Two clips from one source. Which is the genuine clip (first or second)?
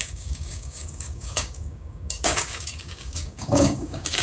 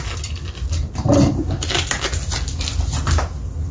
second